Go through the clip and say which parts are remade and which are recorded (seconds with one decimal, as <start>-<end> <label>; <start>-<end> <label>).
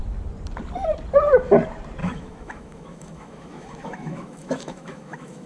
0.0-2.0 recorded; 2.0-5.5 remade